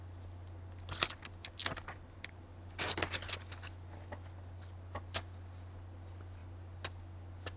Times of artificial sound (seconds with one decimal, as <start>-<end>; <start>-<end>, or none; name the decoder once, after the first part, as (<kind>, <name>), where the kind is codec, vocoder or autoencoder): none

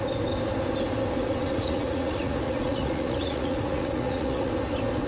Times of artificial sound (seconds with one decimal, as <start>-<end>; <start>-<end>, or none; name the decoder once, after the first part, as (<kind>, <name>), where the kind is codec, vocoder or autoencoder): 1.4-4.5 (vocoder, Vocos)

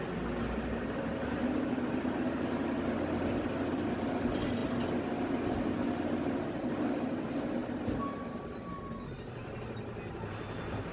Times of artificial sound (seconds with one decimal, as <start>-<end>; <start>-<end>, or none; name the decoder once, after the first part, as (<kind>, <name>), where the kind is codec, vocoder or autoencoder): none

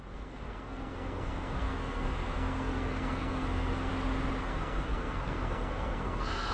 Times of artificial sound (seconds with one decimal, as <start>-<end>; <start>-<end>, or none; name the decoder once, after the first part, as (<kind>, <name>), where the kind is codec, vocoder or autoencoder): 0.0-3.9 (codec, SNAC); 4.4-6.5

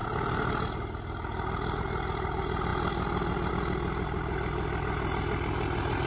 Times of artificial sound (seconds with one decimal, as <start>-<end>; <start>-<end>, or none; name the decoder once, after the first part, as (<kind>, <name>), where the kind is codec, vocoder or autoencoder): none

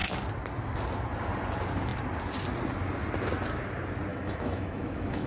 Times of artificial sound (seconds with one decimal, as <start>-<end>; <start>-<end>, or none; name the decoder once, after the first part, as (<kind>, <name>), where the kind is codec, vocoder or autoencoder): 4.1-5.3 (autoencoder, DAC-VAE)

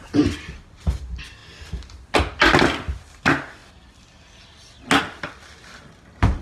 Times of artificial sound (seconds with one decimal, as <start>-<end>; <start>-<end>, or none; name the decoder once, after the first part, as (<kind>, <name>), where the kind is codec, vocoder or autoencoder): none